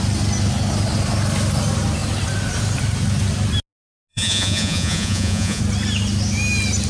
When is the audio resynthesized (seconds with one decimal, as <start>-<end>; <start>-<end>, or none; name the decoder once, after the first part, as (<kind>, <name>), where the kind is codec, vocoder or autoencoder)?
4.1-5.6 (vocoder, Vocos)